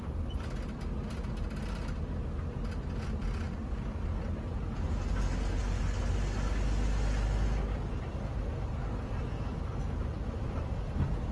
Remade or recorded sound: recorded